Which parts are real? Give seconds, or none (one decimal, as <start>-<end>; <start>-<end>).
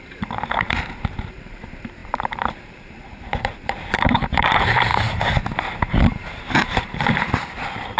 4.9-5.8